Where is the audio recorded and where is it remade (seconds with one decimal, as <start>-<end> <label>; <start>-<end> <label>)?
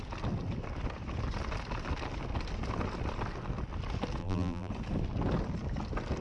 0.0-4.2 recorded; 4.2-4.7 remade; 4.7-6.2 recorded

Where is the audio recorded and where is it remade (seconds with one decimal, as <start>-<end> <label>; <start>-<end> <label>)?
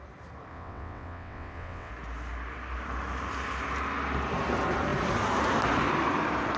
0.0-0.5 recorded; 0.5-1.9 remade; 1.9-6.6 recorded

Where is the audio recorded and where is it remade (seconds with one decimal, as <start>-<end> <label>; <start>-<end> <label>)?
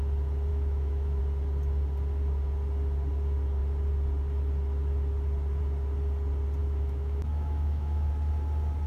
0.0-0.5 recorded; 0.5-1.2 remade; 1.2-6.6 recorded; 6.6-8.1 remade; 8.1-8.9 recorded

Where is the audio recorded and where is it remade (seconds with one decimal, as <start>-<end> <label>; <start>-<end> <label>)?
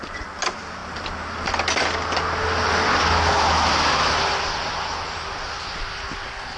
0.0-6.6 recorded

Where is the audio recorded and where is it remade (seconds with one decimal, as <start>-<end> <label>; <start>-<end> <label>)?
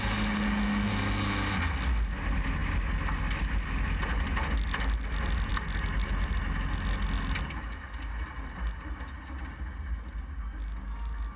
0.0-11.4 recorded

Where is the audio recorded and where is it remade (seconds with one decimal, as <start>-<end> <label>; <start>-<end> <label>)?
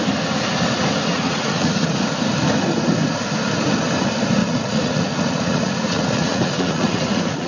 0.0-1.1 recorded; 1.1-1.8 remade; 1.8-4.4 recorded; 4.4-7.5 remade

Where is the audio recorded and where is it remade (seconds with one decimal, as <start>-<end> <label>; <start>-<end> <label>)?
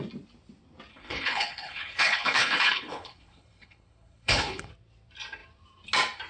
0.0-0.9 recorded; 0.9-4.7 remade; 4.7-6.3 recorded